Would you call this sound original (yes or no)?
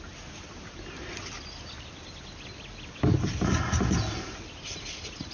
yes